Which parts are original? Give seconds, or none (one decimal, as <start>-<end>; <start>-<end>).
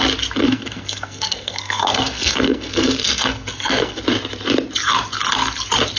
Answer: 0.0-0.4; 4.0-6.0